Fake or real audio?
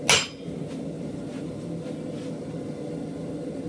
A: real